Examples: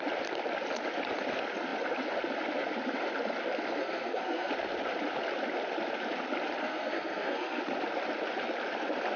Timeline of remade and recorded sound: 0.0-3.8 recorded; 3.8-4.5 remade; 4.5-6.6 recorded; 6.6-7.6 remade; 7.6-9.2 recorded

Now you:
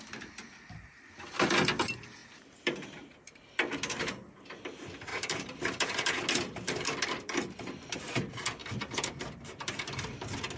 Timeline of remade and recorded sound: 0.0-2.2 recorded; 2.2-3.5 remade; 3.5-5.1 recorded; 5.1-6.2 remade; 6.2-8.6 recorded; 8.6-9.9 remade; 9.9-10.6 recorded

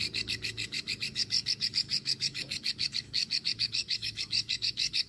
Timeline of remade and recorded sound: 0.0-5.1 remade

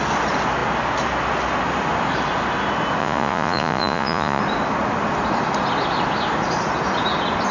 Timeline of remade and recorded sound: 0.0-3.0 recorded; 3.0-4.4 remade; 4.4-7.5 recorded

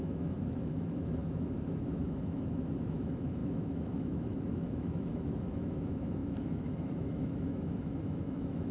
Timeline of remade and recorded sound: 0.0-8.7 remade

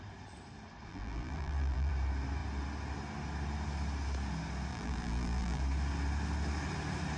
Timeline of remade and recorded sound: 0.0-0.9 recorded; 0.9-1.9 remade; 1.9-4.7 recorded; 4.7-5.6 remade; 5.6-7.2 recorded

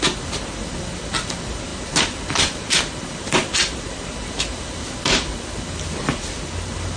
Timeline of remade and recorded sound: 0.0-7.0 recorded